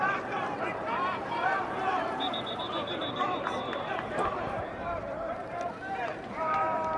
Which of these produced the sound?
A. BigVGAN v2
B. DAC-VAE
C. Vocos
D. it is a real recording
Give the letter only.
A